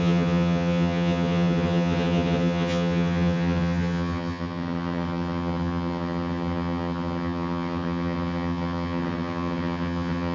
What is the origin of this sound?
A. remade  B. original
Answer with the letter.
A